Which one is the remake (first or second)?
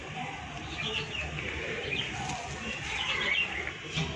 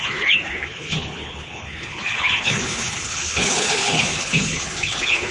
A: second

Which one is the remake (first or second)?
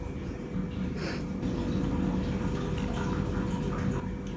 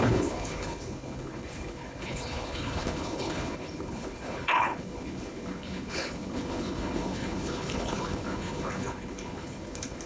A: second